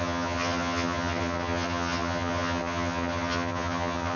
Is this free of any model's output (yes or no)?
no